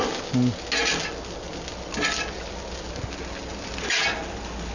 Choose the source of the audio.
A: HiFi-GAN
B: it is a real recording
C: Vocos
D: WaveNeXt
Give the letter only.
B